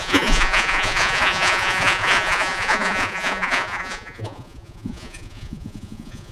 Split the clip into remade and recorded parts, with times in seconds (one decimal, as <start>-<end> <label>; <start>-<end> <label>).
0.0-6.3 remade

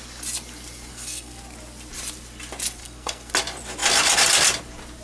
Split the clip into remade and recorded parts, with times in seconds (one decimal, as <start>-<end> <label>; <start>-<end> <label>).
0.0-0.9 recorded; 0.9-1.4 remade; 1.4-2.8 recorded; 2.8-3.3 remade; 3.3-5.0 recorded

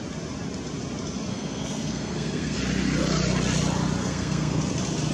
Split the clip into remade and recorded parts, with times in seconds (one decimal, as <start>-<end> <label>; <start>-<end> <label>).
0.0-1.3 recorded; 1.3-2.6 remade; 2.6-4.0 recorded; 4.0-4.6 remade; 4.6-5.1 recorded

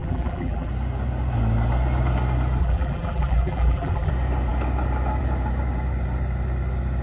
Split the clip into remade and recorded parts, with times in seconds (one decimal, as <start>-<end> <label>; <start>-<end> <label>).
0.0-0.7 remade; 0.7-2.6 recorded; 2.6-4.1 remade; 4.1-7.0 recorded

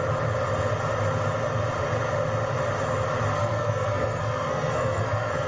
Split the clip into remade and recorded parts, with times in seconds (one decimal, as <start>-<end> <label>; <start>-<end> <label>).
0.0-3.3 recorded; 3.3-5.5 remade